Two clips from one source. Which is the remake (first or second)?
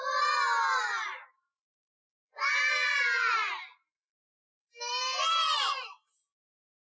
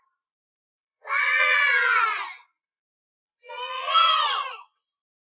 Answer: second